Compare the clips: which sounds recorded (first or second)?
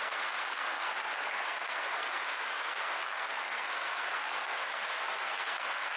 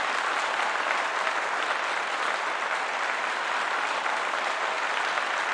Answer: second